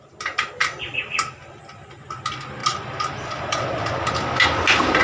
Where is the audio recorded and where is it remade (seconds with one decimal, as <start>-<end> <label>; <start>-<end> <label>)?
0.0-0.6 recorded; 0.6-1.9 remade; 1.9-2.6 recorded; 2.6-3.6 remade; 3.6-5.0 recorded